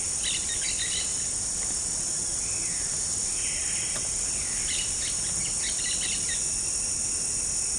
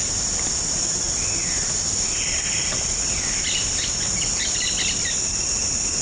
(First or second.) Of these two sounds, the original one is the first